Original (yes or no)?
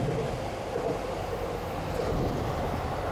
yes